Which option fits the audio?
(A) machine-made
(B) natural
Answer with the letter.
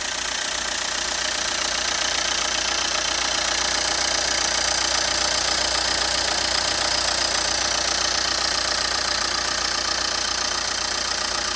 B